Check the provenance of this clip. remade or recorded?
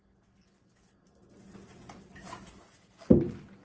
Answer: recorded